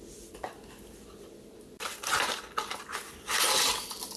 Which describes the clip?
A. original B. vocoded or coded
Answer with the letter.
A